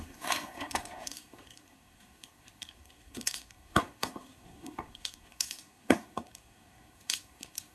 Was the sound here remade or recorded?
remade